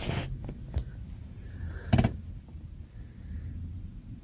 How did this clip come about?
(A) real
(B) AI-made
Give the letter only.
B